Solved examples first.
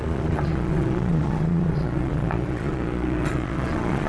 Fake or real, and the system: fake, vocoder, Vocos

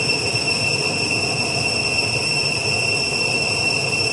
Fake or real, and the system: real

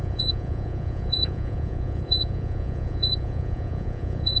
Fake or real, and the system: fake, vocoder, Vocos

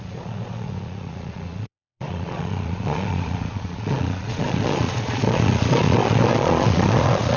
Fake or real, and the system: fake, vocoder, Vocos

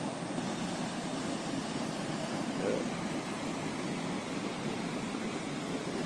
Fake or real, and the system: real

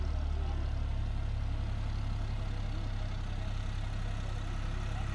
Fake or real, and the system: real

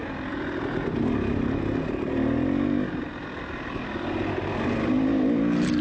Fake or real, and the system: real